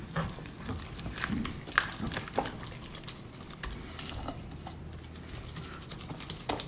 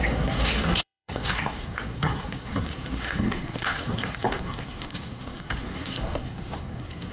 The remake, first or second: second